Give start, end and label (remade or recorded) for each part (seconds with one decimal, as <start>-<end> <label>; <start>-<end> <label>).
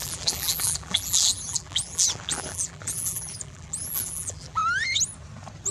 0.0-4.6 remade; 4.6-5.7 recorded